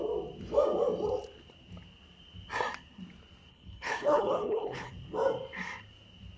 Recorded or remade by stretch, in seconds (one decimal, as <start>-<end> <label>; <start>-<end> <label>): 0.0-3.5 recorded; 3.5-4.9 remade; 4.9-6.4 recorded